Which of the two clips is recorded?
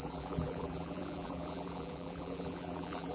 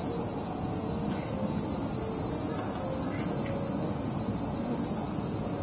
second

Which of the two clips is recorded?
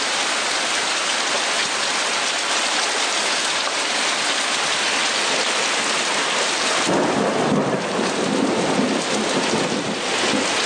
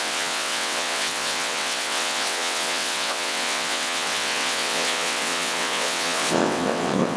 first